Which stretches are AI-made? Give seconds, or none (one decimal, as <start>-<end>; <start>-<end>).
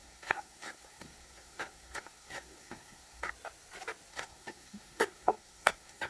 0.0-3.3; 4.1-6.1